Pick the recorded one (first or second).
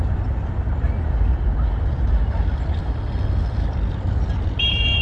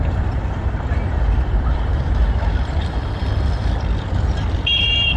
first